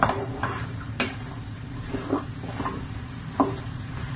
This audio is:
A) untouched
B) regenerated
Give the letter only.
B